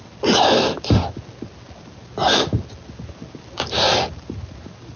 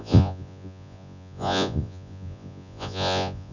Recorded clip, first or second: first